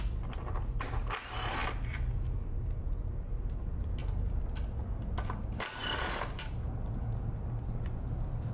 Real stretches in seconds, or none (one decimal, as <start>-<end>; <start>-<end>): 0.0-8.5